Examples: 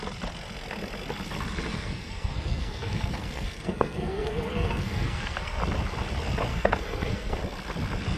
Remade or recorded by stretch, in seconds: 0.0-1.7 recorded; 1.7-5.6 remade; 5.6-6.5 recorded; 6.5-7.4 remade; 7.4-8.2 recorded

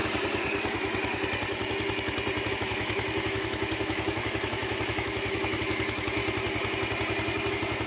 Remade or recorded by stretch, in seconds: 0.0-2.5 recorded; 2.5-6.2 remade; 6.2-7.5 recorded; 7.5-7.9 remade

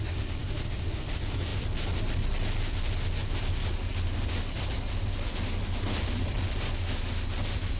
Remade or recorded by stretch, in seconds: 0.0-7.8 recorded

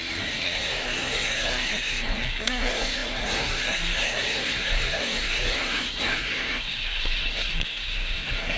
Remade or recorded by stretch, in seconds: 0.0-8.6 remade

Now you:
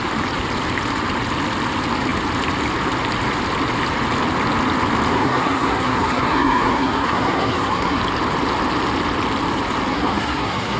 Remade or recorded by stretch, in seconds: 0.0-5.1 recorded; 5.1-8.0 remade; 8.0-9.9 recorded; 9.9-10.8 remade

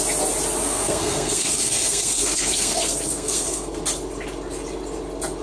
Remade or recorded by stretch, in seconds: 0.0-0.6 recorded; 0.6-3.8 remade; 3.8-5.4 recorded

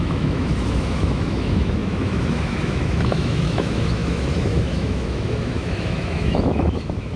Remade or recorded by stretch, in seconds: 0.0-7.2 remade